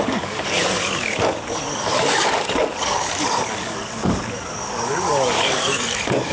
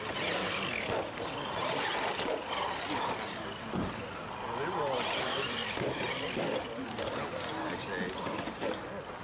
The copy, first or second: first